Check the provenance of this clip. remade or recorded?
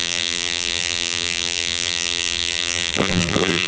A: remade